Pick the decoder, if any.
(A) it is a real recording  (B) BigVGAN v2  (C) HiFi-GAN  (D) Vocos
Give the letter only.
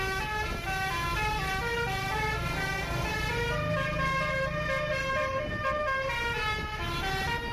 A